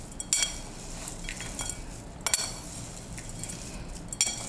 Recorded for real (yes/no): yes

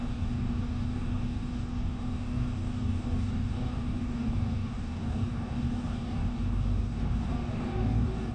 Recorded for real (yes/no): no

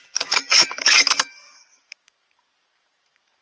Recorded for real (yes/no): no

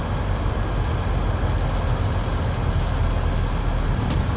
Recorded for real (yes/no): yes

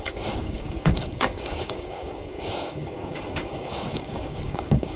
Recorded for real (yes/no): no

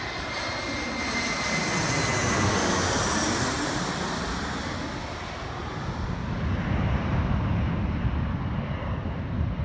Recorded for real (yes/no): yes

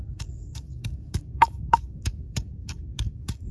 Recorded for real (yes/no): no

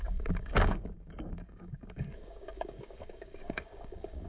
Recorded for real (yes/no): no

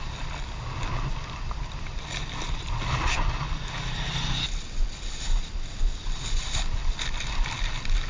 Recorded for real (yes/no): yes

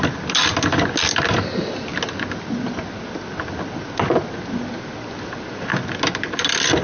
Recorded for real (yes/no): yes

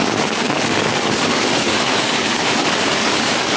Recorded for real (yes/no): no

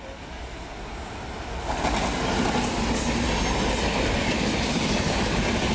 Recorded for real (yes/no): yes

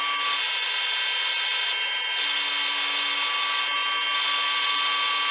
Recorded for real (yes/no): yes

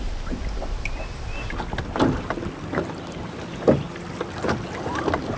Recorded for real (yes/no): yes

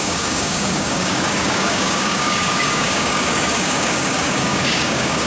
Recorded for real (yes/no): no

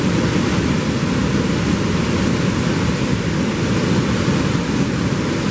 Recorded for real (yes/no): yes